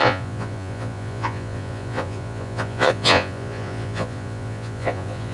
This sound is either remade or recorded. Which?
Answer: remade